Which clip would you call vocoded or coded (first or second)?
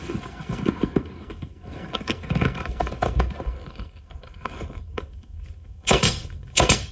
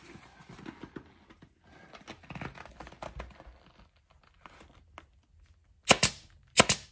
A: first